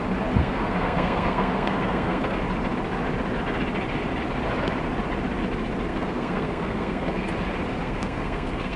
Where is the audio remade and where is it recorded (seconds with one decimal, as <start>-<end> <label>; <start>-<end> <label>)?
0.0-0.4 recorded; 0.4-2.4 remade; 2.4-5.9 recorded; 5.9-7.3 remade; 7.3-7.8 recorded; 7.8-8.8 remade